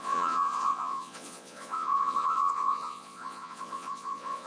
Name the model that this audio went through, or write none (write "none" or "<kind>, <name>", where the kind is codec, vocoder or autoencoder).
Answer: vocoder, Vocos